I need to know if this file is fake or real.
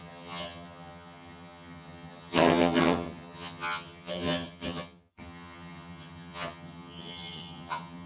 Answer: fake